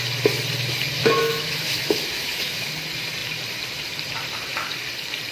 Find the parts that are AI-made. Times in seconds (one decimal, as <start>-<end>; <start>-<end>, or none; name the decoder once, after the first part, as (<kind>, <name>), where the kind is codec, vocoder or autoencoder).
1.0-2.7 (autoencoder, DAC-VAE)